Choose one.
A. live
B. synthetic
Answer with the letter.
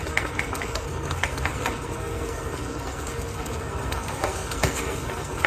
B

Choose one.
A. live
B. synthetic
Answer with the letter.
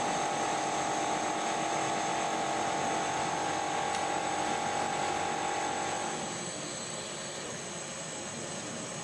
A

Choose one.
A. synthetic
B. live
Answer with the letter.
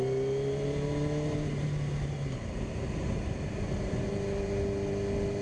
B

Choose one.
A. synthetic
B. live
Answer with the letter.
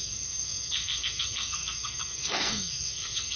A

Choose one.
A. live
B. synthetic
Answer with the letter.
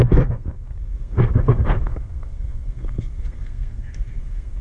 B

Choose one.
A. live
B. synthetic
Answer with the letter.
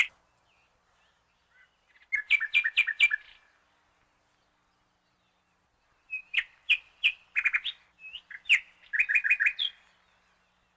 A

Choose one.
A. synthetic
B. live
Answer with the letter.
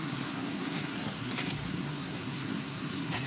A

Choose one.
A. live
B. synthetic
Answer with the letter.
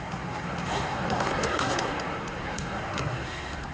B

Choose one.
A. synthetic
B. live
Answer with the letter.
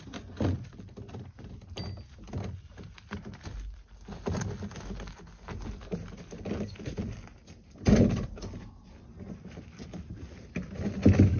B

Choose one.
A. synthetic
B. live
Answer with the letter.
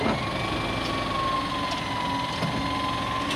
B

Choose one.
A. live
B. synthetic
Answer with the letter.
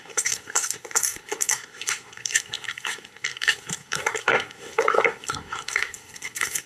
B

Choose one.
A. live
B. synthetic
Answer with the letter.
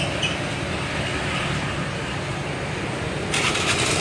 A